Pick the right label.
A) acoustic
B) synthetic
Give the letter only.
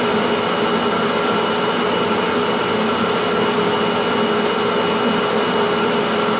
A